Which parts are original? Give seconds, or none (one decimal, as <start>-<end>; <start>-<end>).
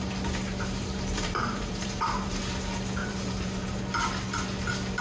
0.0-0.8; 2.4-3.0; 3.8-5.0